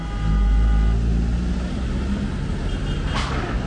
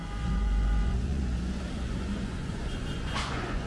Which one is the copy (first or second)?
second